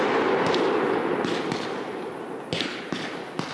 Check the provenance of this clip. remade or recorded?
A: recorded